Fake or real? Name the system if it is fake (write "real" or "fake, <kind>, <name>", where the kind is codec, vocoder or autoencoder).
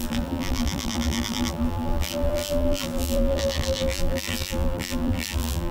fake, vocoder, BigVGAN v2